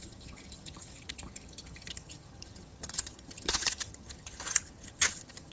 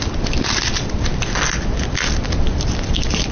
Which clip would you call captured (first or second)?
second